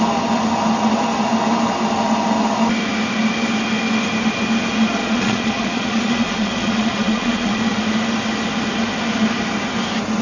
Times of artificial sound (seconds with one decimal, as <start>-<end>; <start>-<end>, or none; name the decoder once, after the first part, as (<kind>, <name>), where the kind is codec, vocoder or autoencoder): 5.0-7.6 (vocoder, Vocos)